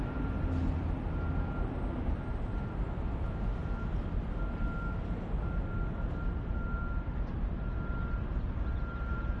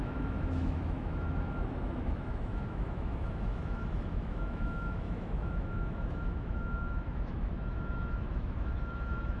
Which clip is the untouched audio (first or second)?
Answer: first